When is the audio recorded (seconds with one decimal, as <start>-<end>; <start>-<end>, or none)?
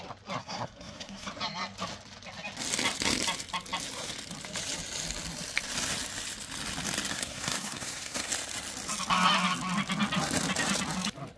0.0-0.4; 1.3-7.1; 8.3-11.4